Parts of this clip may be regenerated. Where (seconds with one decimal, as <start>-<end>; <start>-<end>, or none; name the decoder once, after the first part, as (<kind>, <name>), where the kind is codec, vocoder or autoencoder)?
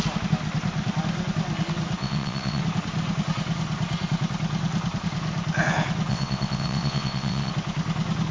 2.0-2.6 (vocoder, WaveNeXt); 6.1-7.5